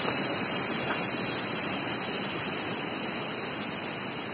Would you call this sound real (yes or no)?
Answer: yes